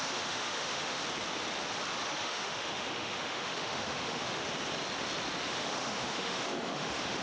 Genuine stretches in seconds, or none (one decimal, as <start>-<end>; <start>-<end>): 1.0-2.1; 4.4-5.5